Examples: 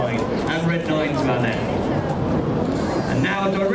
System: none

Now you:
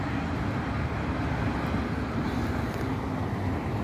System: none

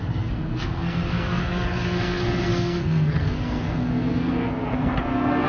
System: codec, SNAC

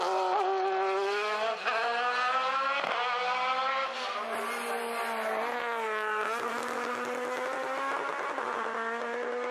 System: none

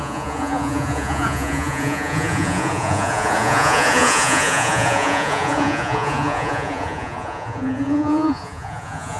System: vocoder, Vocos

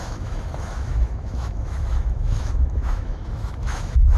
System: autoencoder, DAC-VAE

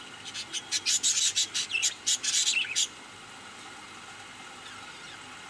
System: none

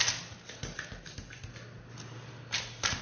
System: none